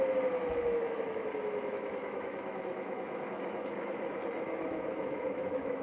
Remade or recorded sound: remade